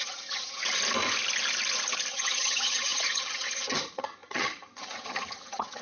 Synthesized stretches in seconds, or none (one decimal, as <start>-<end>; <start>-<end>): 0.0-0.6; 2.1-5.8